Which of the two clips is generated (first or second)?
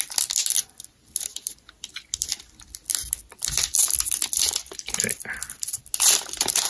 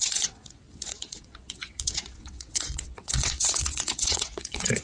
second